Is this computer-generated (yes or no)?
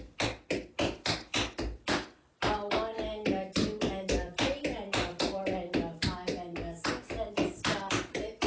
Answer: no